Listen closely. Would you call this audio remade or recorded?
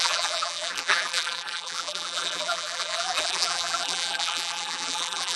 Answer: remade